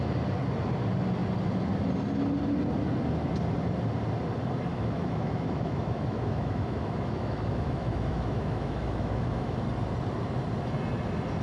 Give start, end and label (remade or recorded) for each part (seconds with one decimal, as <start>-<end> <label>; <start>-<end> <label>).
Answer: 0.0-4.7 recorded; 4.7-9.6 remade; 9.6-11.4 recorded

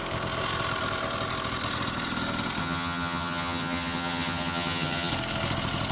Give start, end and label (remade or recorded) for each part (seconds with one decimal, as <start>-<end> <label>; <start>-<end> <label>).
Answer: 0.0-2.6 recorded; 2.6-5.1 remade; 5.1-5.9 recorded